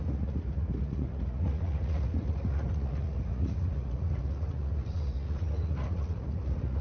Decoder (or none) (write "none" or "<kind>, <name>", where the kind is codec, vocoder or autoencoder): vocoder, Vocos